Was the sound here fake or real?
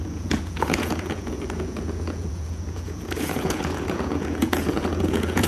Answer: fake